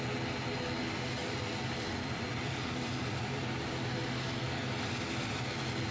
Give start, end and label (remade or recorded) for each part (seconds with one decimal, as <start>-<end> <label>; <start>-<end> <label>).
0.0-1.2 recorded; 1.2-3.7 remade; 3.7-5.9 recorded